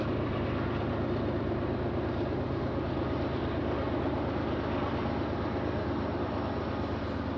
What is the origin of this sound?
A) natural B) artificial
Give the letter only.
A